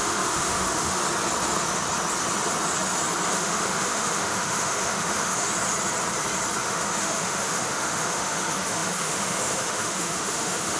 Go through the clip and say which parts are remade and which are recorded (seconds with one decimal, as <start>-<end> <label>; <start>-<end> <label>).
0.0-1.0 remade; 1.0-3.3 recorded; 3.3-5.5 remade; 5.5-6.6 recorded; 6.6-10.8 remade